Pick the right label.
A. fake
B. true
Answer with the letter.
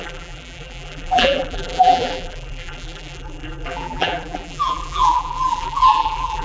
A